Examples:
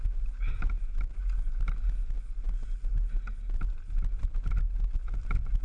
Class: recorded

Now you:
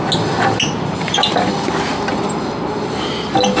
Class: recorded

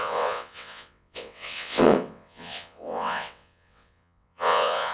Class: remade